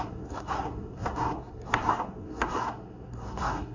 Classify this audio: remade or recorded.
remade